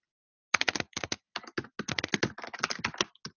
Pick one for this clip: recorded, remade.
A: recorded